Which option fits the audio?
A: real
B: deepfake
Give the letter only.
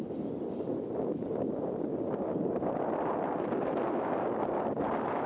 A